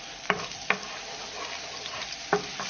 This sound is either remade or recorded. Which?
recorded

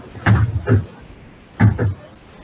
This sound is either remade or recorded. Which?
recorded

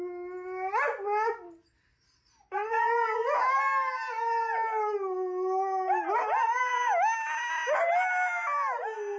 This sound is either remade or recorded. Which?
recorded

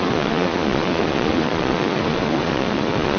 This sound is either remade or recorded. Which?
remade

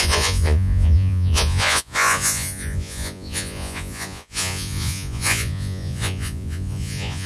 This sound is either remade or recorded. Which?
remade